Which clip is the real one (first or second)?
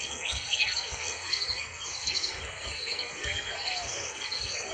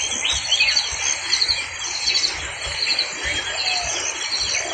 second